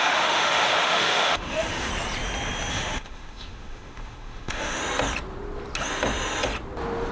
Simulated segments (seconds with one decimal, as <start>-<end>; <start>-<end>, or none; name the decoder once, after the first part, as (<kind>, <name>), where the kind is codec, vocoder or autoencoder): 0.0-1.9 (autoencoder, DAC-VAE); 2.7-4.8